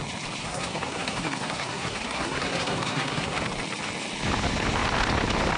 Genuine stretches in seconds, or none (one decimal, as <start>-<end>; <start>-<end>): 0.0-0.4; 3.4-5.6